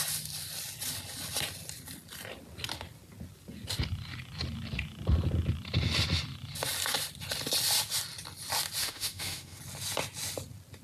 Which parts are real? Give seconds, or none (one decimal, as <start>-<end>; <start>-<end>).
0.0-8.8; 9.6-10.8